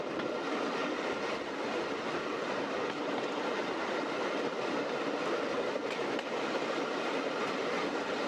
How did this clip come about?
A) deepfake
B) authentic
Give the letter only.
B